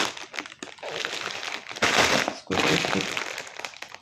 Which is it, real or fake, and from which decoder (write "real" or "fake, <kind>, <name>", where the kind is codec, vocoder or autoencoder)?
real